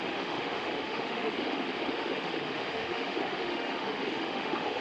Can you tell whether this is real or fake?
fake